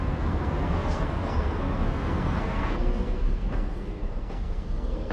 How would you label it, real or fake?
fake